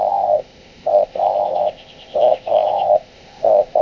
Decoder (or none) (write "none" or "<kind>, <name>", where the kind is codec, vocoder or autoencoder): codec, ZipCodec